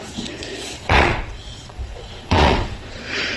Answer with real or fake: fake